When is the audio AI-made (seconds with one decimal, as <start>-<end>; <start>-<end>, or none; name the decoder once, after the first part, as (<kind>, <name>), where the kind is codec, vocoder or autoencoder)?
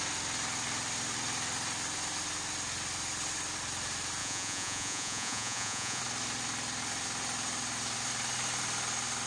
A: 4.2-6.0 (vocoder, Vocos)